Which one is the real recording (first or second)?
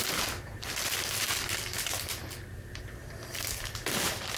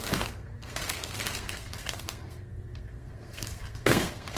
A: first